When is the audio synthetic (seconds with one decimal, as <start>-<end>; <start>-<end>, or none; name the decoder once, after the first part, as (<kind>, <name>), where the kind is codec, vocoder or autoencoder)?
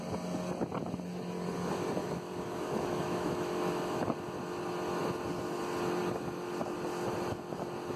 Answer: 2.0-4.0 (autoencoder, DAC-VAE)